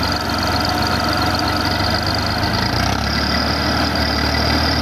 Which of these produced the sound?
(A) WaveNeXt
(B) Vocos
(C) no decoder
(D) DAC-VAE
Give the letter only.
C